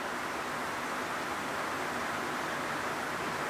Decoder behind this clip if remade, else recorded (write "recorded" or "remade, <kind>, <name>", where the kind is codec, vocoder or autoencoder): recorded